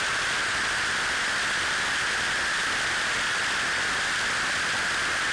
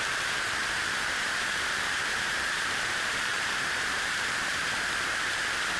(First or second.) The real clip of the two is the first